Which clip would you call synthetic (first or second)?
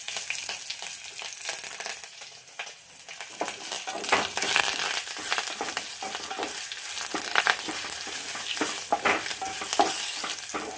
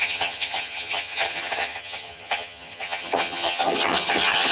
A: second